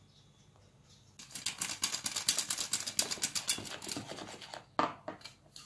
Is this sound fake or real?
real